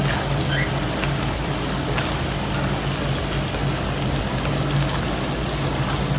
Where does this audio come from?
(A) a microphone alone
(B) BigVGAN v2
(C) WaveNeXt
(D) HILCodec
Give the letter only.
A